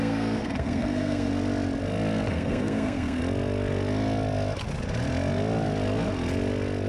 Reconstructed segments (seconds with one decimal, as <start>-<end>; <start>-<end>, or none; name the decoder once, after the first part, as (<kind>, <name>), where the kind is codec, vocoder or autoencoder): 0.0-1.3 (codec, SNAC); 2.3-3.2